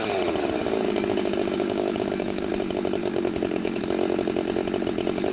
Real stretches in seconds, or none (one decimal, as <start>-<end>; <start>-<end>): 0.0-0.6; 2.5-3.0; 3.8-5.3